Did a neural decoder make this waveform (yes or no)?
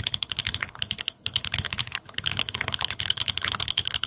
yes